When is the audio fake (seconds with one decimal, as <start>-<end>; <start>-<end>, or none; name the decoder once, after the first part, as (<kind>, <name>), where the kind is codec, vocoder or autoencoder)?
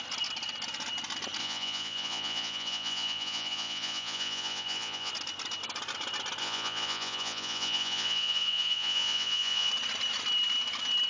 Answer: 1.4-5.1 (vocoder, Vocos); 6.4-9.7